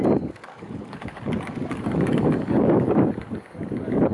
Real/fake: fake